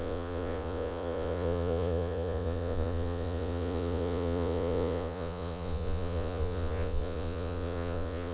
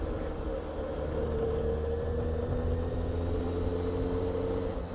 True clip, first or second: second